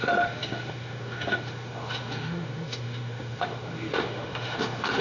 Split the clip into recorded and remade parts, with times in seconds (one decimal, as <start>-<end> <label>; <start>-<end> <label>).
0.0-5.0 remade